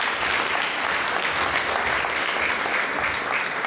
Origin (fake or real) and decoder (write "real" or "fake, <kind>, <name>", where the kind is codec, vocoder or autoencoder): real